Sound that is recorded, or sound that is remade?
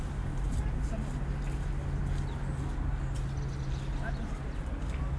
recorded